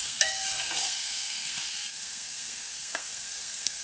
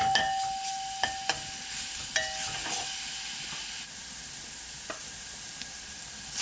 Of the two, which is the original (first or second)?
second